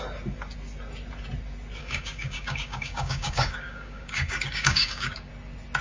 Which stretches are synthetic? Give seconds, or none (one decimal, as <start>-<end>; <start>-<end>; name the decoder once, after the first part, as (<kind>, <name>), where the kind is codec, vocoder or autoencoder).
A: 1.8-5.3 (codec, DAC)